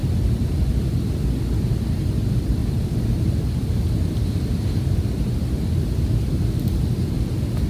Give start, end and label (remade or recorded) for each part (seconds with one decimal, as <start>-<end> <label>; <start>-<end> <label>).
0.0-2.6 recorded; 2.6-7.2 remade; 7.2-7.7 recorded